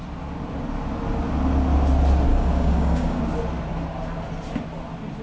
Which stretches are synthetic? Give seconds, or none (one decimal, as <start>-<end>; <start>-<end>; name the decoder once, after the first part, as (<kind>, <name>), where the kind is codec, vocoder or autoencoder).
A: 2.3-3.2 (codec, DAC)